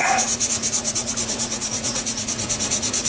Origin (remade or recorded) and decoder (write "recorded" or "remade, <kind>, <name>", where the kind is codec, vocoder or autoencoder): remade, vocoder, Vocos